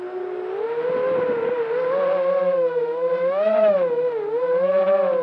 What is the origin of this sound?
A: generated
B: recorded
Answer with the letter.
B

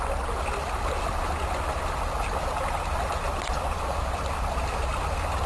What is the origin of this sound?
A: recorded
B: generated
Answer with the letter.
A